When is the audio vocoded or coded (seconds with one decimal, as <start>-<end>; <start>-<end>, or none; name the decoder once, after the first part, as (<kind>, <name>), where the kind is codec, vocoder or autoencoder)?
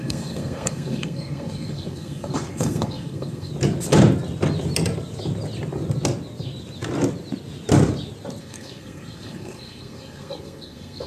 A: 0.0-3.5 (codec, SNAC); 8.4-11.1